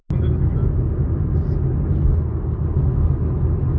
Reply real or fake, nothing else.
real